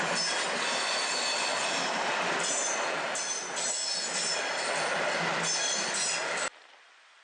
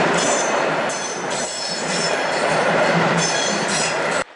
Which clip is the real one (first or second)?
first